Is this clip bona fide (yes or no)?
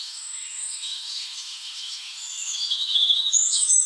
no